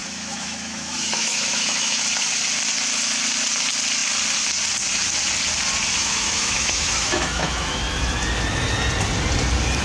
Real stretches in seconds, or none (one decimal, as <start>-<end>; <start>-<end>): 2.0-6.0; 7.8-9.8